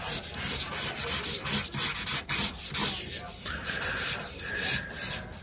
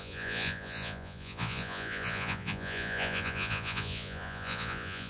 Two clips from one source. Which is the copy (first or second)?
second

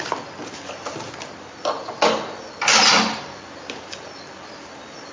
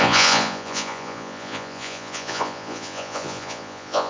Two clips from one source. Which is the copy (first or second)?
second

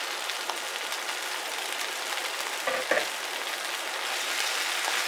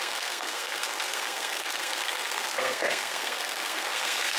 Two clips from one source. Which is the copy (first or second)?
second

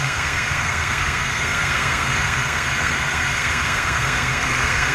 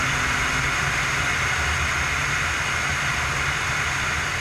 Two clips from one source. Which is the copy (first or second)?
first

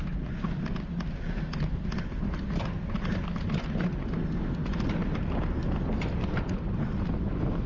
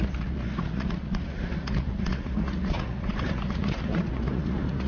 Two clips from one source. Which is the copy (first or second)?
second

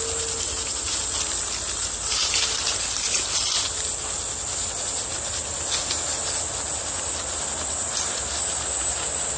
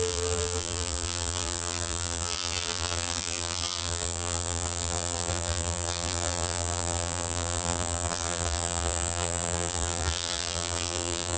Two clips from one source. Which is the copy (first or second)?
second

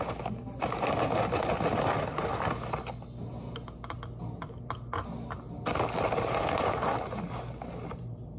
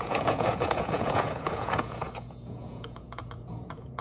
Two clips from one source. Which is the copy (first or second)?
second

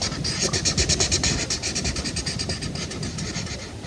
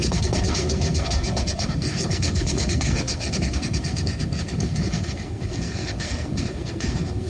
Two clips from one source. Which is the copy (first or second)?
second